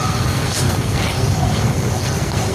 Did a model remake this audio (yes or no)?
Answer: yes